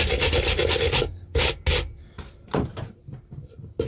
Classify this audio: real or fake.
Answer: real